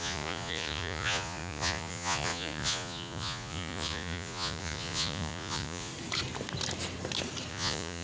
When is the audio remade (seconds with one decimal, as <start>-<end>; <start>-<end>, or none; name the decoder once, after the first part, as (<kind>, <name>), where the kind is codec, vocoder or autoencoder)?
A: 0.0-5.9 (vocoder, Vocos); 7.5-8.0